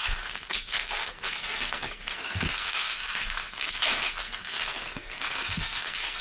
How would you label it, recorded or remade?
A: remade